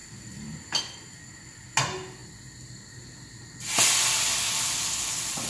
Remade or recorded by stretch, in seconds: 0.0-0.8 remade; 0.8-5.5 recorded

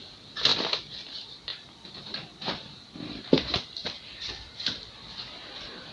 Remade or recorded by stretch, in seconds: 0.0-0.5 remade; 0.5-1.1 recorded; 1.1-5.9 remade

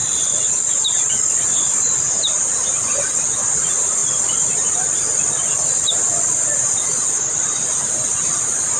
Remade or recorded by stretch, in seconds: 0.0-1.1 remade; 1.1-8.8 recorded

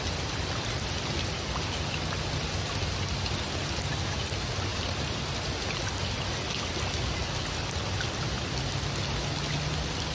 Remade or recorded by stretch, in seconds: 0.0-4.7 recorded; 4.7-5.8 remade; 5.8-10.1 recorded